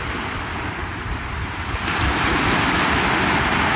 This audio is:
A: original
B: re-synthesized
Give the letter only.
B